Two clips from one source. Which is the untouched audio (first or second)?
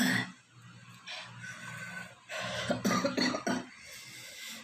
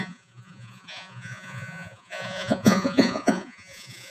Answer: first